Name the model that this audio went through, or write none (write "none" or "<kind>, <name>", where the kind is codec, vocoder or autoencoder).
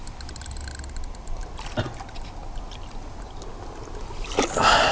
none